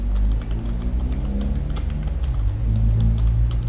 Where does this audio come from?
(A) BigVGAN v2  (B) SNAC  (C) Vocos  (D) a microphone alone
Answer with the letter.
D